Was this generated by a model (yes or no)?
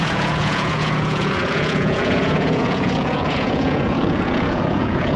yes